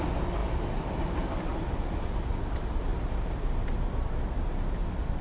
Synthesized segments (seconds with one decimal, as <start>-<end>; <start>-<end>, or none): 1.5-2.2; 2.9-4.2